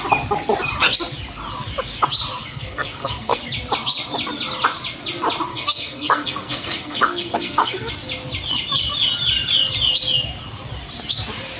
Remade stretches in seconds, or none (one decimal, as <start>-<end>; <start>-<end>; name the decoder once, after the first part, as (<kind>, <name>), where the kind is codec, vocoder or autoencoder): 2.4-3.4 (codec, SNAC); 5.5-7.9